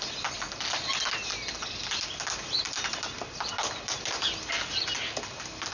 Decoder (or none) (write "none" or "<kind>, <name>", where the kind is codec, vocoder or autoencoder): none